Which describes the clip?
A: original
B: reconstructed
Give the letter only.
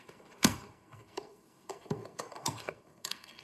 B